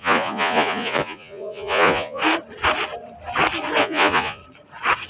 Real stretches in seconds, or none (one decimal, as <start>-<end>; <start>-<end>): 2.2-3.8; 4.4-5.1